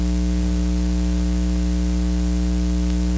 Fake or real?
real